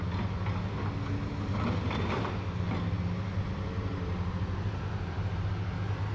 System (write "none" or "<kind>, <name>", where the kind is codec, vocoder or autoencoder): none